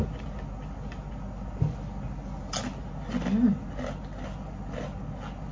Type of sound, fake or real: real